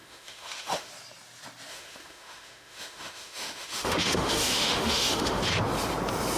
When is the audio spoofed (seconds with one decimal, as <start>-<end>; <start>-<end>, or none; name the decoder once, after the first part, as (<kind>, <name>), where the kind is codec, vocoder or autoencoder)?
0.0-0.9 (autoencoder, DAC-VAE); 1.7-5.4